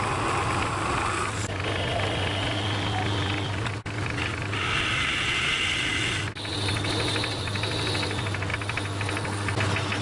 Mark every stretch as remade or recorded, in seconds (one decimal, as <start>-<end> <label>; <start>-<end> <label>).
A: 0.0-10.0 recorded